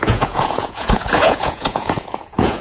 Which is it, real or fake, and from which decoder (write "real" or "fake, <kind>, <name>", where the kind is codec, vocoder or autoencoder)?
fake, vocoder, Vocos